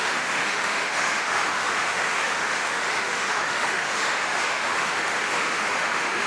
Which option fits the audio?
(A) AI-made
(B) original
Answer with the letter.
A